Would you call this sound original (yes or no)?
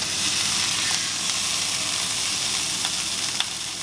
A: yes